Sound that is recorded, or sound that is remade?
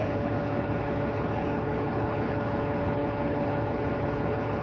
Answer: remade